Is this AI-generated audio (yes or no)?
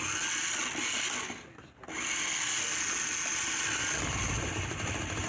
no